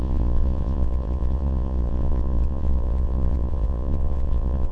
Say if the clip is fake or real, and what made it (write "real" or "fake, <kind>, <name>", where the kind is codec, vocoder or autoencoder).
fake, vocoder, Vocos